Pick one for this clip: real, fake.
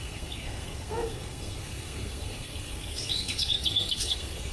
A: fake